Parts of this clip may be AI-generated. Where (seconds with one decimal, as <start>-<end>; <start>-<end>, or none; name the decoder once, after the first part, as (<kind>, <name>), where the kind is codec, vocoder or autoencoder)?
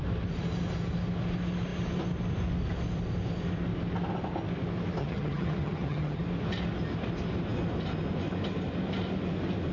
5.0-6.2 (vocoder, HiFi-GAN)